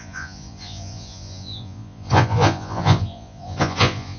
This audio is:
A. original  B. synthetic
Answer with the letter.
B